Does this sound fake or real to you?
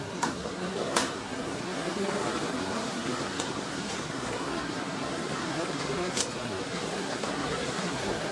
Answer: fake